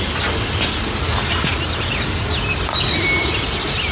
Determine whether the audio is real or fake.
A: real